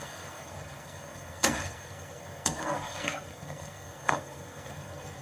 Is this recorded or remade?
remade